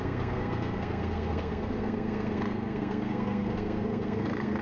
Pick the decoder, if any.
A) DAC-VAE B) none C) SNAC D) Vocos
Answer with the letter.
C